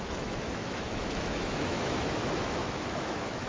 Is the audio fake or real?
fake